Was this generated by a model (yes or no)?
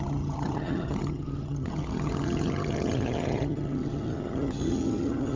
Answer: yes